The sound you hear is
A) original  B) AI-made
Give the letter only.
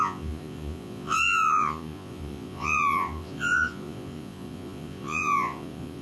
B